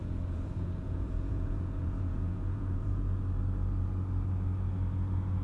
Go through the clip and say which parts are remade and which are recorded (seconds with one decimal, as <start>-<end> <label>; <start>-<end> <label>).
0.0-3.2 remade; 3.2-5.4 recorded